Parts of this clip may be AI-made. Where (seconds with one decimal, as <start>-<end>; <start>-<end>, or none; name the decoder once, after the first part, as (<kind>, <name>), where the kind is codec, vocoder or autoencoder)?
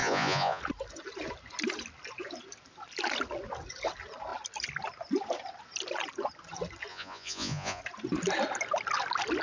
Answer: 0.0-0.6 (vocoder, Vocos); 6.9-7.8